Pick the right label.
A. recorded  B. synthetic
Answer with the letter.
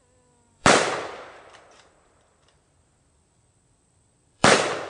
B